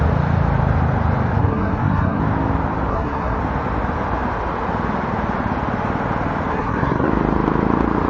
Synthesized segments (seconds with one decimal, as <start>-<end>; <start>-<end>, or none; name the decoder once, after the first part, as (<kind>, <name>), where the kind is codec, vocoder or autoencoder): 1.4-2.2 (codec, SNAC); 2.9-3.4; 6.5-7.1